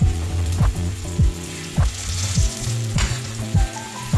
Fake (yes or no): yes